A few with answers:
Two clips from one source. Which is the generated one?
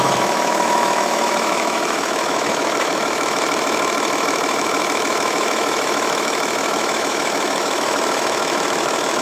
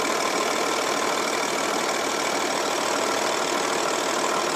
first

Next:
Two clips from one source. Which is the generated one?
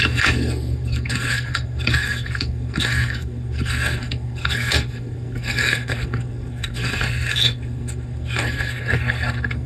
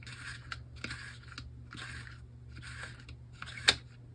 first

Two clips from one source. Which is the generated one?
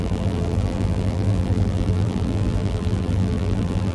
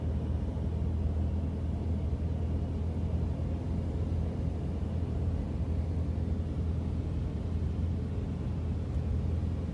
first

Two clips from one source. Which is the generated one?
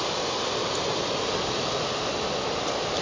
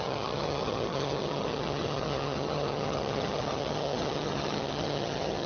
second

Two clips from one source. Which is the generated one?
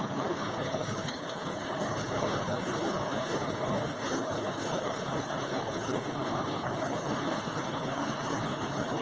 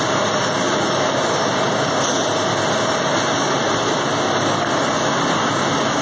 first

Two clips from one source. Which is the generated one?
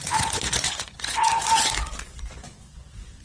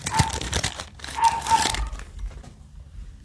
first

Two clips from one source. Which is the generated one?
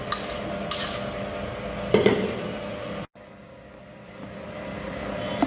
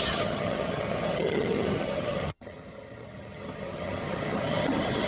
second